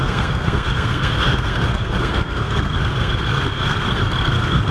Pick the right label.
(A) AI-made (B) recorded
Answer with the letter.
A